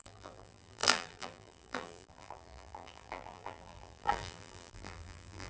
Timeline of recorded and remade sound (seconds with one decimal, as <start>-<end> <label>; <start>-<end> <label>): 0.0-5.5 remade